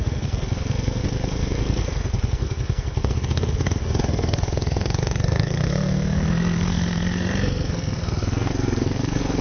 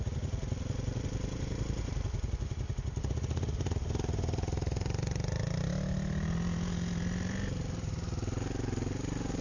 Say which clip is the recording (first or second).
second